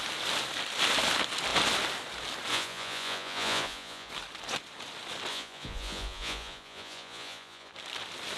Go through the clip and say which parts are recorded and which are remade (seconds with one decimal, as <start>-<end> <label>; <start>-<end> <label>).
0.0-2.5 recorded; 2.5-4.1 remade; 4.1-5.3 recorded; 5.3-7.7 remade; 7.7-8.4 recorded

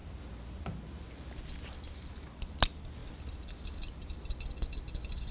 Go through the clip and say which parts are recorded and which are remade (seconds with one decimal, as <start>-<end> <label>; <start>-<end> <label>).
0.0-1.3 remade; 1.3-5.3 recorded

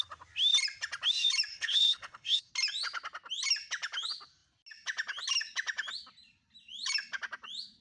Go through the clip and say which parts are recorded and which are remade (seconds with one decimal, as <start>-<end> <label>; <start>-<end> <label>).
0.0-1.5 recorded; 1.5-2.5 remade; 2.5-7.8 recorded

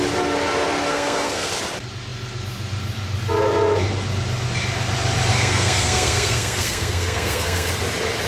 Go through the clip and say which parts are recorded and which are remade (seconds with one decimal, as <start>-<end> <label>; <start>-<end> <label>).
0.0-0.9 recorded; 0.9-1.5 remade; 1.5-5.3 recorded; 5.3-7.7 remade; 7.7-8.3 recorded

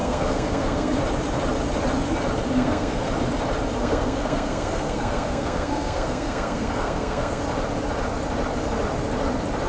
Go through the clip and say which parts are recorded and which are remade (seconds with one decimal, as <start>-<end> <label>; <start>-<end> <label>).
0.0-1.0 remade; 1.0-2.5 recorded; 2.5-3.1 remade; 3.1-3.8 recorded; 3.8-7.4 remade; 7.4-9.7 recorded

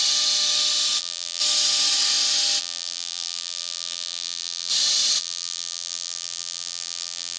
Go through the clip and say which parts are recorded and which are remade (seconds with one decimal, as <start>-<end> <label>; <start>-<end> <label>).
0.0-1.0 recorded; 1.0-1.4 remade; 1.4-2.6 recorded; 2.6-4.7 remade; 4.7-5.2 recorded; 5.2-7.4 remade

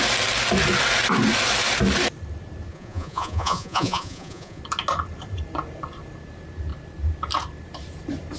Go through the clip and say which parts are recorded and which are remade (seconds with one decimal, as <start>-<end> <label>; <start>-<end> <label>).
0.0-2.7 recorded; 2.7-4.6 remade; 4.6-8.4 recorded

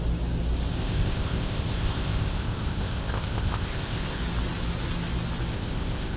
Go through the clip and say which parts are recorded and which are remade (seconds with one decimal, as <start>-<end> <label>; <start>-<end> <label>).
0.0-0.8 recorded; 0.8-4.2 remade; 4.2-5.5 recorded; 5.5-6.2 remade